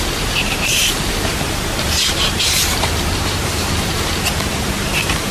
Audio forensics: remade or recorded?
remade